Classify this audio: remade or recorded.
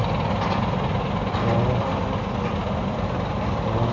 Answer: recorded